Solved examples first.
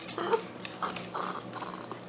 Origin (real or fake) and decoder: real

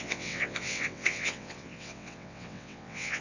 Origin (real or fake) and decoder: fake, vocoder, WaveNeXt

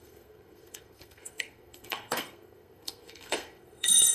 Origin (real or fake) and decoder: fake, codec, SNAC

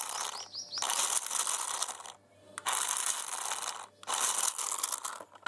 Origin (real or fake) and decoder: real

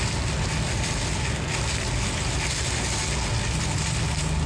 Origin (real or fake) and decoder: real